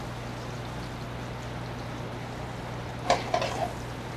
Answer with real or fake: real